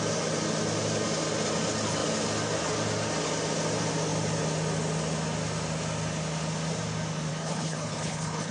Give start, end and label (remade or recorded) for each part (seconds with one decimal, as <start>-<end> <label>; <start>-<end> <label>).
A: 0.0-7.3 recorded; 7.3-8.5 remade